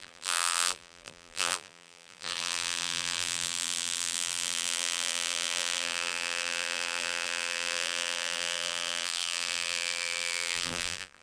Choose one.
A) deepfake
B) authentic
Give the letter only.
A